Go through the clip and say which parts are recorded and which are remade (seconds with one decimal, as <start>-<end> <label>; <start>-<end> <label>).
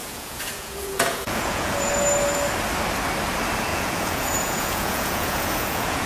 0.0-1.9 remade; 1.9-3.7 recorded; 3.7-6.1 remade